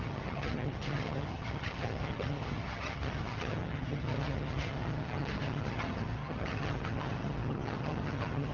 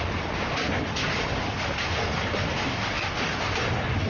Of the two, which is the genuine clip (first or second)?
second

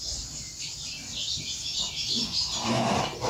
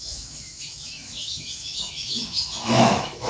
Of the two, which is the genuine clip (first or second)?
first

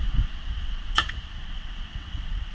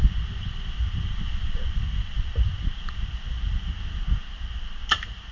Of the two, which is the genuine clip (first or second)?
second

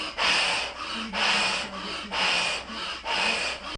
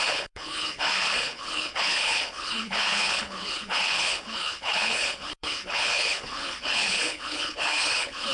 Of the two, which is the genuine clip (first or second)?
first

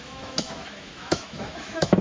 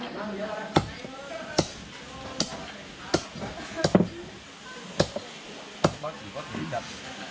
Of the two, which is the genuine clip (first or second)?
second